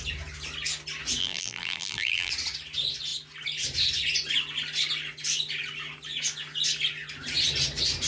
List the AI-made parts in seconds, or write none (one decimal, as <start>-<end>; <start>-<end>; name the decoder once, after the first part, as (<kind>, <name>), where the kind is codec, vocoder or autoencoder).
1.2-2.3 (vocoder, BigVGAN v2)